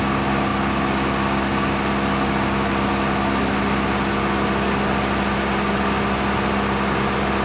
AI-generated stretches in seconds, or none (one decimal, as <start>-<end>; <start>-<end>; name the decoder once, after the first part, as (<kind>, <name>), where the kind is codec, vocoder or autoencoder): none